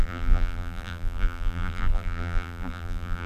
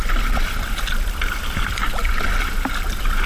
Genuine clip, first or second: second